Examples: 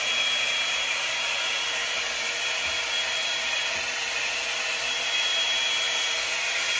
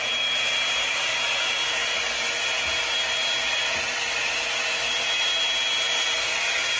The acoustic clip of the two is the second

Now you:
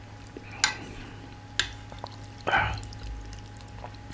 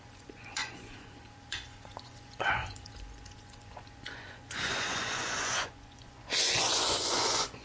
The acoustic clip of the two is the first